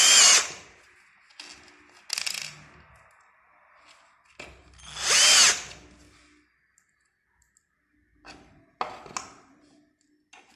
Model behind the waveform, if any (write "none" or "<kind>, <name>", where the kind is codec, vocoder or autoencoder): none